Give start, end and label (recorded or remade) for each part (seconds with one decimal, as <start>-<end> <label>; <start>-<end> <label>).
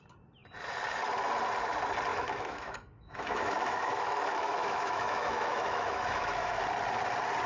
0.0-2.1 recorded; 2.1-6.6 remade; 6.6-7.5 recorded